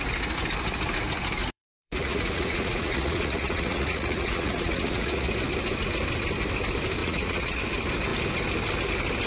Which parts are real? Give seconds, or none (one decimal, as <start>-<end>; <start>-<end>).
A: 0.0-1.4; 5.3-7.0; 7.6-9.3

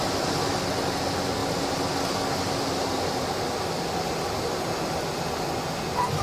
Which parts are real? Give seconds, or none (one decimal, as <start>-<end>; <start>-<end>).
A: 0.0-6.2

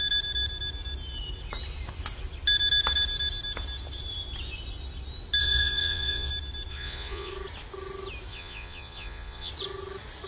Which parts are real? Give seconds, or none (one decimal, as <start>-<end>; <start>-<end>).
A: 0.0-5.4; 6.3-6.7; 7.3-8.3; 9.5-10.3

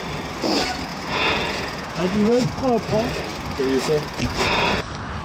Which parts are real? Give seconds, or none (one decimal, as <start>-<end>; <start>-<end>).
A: 0.0-0.9; 2.5-5.2

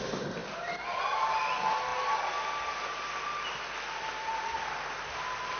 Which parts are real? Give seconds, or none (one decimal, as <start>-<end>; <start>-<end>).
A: 0.0-5.6